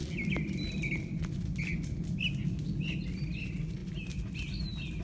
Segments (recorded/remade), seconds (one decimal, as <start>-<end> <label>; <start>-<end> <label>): 0.0-2.2 remade; 2.2-5.0 recorded